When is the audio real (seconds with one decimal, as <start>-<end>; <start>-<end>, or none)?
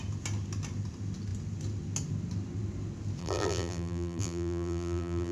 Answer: 0.0-3.2